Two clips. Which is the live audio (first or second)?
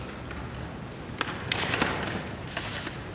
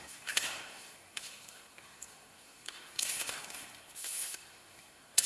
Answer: first